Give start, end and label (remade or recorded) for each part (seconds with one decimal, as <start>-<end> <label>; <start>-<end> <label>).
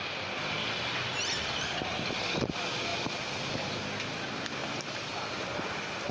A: 0.0-4.6 recorded; 4.6-5.6 remade; 5.6-6.1 recorded